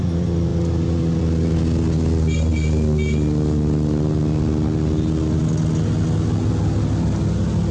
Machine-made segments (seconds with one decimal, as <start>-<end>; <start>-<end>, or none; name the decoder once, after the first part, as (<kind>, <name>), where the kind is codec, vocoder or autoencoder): none